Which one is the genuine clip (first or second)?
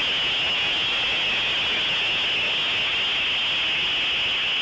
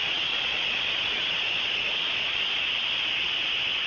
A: first